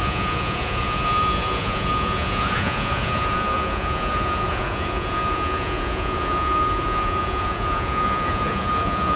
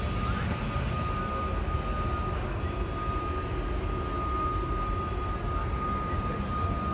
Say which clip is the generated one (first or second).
first